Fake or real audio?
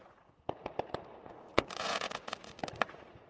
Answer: fake